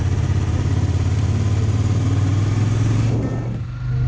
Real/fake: real